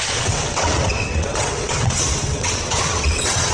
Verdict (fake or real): fake